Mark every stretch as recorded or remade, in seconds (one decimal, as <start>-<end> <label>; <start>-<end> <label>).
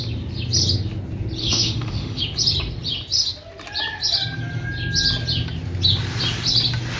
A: 0.0-1.4 recorded; 1.4-2.2 remade; 2.2-7.0 recorded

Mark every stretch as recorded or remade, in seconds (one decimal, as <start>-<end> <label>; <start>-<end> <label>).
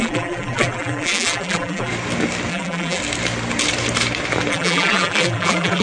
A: 0.0-1.9 remade; 1.9-2.5 recorded; 2.5-3.0 remade; 3.0-4.5 recorded; 4.5-5.8 remade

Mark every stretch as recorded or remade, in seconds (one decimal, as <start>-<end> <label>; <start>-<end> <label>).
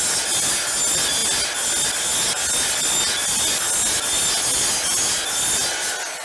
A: 0.0-6.2 recorded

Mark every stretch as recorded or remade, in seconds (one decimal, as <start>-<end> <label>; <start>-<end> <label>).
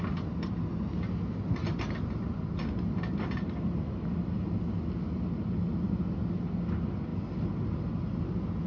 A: 0.0-8.7 recorded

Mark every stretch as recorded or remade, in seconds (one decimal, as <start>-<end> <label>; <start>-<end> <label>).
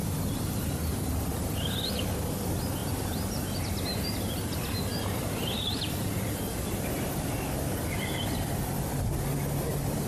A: 0.0-0.6 remade; 0.6-4.5 recorded; 4.5-9.1 remade; 9.1-10.1 recorded